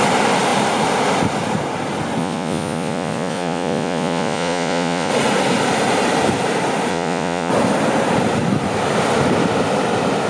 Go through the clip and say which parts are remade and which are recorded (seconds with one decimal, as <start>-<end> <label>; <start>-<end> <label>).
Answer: 0.0-2.2 recorded; 2.2-5.1 remade; 5.1-6.9 recorded; 6.9-7.5 remade; 7.5-10.3 recorded